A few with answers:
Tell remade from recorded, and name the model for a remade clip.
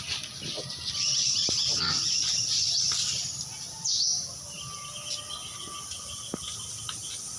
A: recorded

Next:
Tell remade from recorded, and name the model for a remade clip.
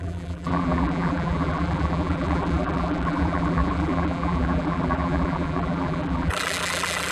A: remade, vocoder, BigVGAN v2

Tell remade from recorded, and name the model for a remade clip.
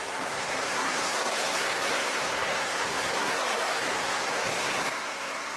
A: remade, codec, SNAC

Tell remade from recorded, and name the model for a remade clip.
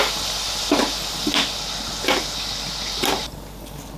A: recorded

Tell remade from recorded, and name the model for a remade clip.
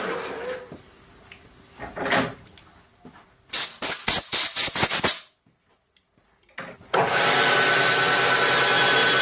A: recorded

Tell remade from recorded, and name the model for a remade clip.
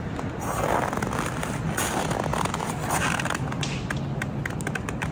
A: recorded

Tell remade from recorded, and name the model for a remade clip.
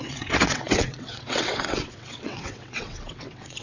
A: remade, vocoder, WaveNeXt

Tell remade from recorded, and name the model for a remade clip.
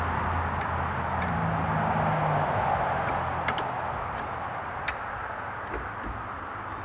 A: recorded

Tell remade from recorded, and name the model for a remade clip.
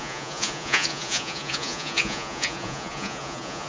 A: remade, vocoder, Vocos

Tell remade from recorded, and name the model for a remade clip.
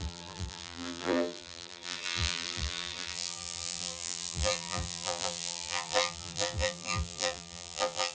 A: remade, vocoder, BigVGAN v2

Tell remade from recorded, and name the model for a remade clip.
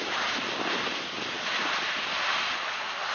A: recorded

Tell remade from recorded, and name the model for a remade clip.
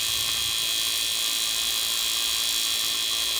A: recorded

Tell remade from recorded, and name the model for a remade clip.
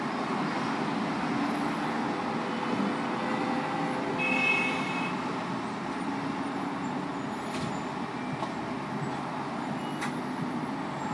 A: recorded